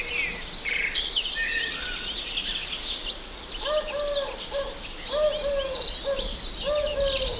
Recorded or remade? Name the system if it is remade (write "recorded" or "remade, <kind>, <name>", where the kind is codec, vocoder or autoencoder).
recorded